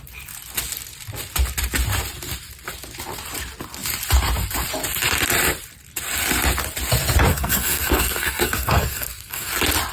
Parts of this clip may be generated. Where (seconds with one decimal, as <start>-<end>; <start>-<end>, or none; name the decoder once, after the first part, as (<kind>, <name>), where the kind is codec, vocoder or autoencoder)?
7.3-9.5 (codec, SNAC)

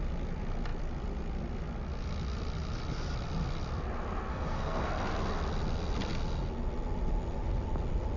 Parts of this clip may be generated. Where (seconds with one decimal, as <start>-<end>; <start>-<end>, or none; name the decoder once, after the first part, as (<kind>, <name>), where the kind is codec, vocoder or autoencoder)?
4.3-4.9 (codec, SNAC)

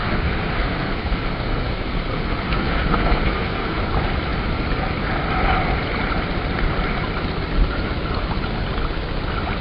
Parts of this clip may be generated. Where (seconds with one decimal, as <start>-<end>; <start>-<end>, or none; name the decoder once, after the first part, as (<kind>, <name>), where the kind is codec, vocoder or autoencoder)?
0.0-3.8 (codec, SNAC)